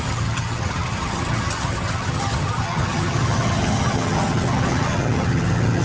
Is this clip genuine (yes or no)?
no